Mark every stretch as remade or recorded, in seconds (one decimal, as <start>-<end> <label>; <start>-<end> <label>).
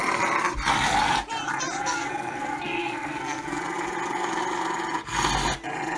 0.0-1.8 recorded; 1.8-3.6 remade; 3.6-6.0 recorded